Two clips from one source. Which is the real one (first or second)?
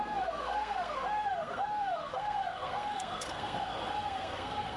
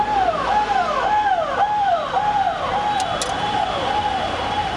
second